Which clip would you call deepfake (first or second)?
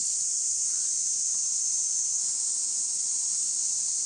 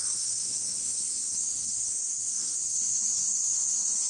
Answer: second